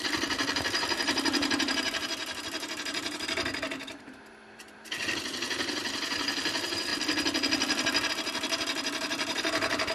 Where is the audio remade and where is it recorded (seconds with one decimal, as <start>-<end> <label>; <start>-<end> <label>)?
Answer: 0.0-6.9 remade; 6.9-8.1 recorded; 8.1-9.9 remade